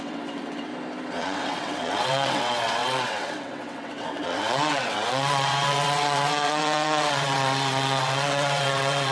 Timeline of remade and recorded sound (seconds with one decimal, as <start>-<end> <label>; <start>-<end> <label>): 0.0-0.7 remade; 0.7-1.2 recorded; 1.2-9.1 remade